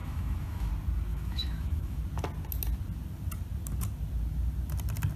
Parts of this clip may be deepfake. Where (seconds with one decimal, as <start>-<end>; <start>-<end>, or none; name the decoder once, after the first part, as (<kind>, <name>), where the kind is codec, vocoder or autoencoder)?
0.0-0.7 (autoencoder, DAC-VAE); 1.1-2.0